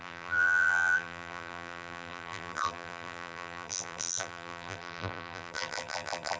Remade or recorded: remade